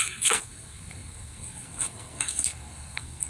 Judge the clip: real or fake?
fake